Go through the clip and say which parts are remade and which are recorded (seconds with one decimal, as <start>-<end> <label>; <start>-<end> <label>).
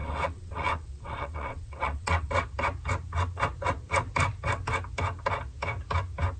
0.0-2.3 remade; 2.3-6.4 recorded